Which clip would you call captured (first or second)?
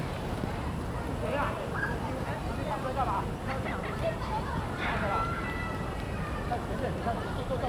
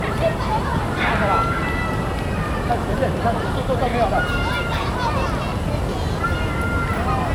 second